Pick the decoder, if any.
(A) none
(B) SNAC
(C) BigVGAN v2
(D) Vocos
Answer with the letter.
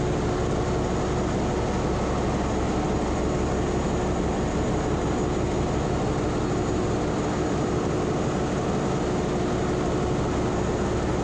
A